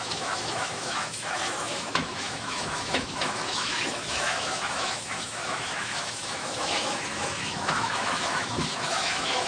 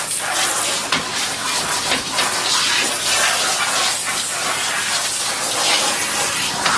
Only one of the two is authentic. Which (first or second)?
second